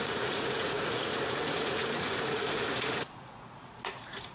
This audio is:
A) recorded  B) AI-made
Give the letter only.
B